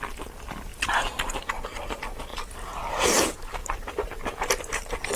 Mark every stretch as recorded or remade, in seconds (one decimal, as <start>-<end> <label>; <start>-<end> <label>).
0.0-0.7 recorded; 0.7-1.5 remade; 1.5-3.6 recorded; 3.6-5.2 remade